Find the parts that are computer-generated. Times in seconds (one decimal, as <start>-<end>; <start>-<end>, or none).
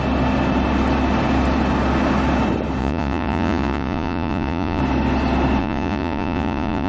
2.8-4.8; 5.6-6.9